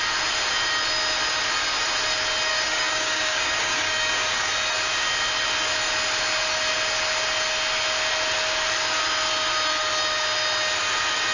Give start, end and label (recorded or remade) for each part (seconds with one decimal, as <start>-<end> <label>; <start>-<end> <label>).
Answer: 0.0-2.5 recorded; 2.5-4.5 remade; 4.5-11.3 recorded